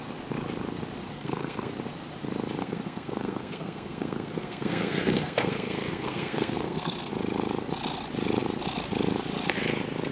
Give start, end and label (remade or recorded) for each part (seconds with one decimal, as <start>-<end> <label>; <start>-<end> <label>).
0.0-1.1 recorded; 1.1-1.7 remade; 1.7-2.6 recorded; 2.6-7.1 remade; 7.1-10.1 recorded